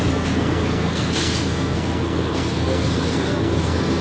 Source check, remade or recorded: remade